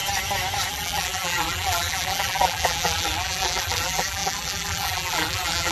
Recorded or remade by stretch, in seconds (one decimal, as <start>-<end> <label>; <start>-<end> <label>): 0.0-0.7 recorded; 0.7-5.7 remade